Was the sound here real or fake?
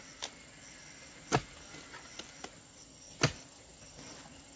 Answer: real